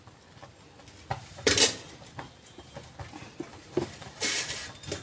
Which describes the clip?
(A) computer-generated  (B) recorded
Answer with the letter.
B